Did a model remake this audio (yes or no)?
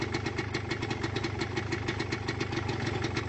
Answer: no